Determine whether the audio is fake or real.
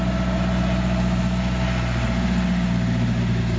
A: real